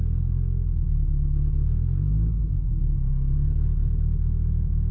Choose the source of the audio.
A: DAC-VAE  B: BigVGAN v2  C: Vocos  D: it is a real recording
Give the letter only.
D